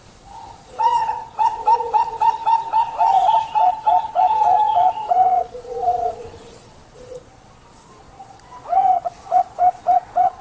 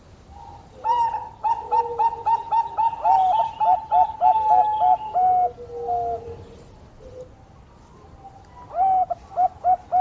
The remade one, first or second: first